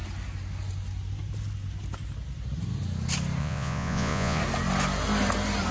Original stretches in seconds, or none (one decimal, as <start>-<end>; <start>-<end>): 0.0-3.4; 4.4-5.7

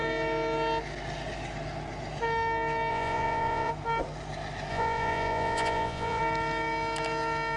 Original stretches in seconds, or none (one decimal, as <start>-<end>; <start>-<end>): 0.0-2.9; 3.7-4.7; 6.2-7.6

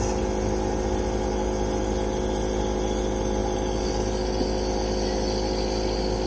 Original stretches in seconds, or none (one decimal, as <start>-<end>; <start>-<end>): 0.0-6.3

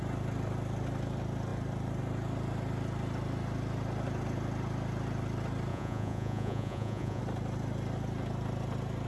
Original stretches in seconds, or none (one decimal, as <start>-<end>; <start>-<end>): 0.0-5.7; 7.2-9.1

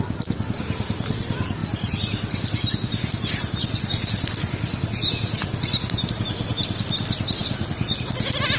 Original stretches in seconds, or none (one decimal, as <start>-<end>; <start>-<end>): 0.0-8.6

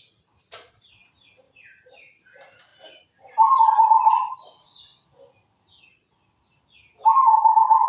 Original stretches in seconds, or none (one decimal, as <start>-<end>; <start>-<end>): 0.0-7.9

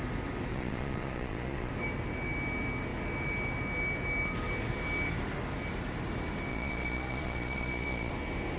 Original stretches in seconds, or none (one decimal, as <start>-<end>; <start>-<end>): 0.0-0.5; 1.7-6.5; 8.1-8.6

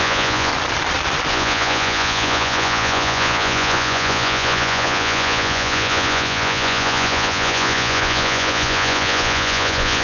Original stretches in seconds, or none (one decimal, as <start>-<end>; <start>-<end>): 0.5-1.3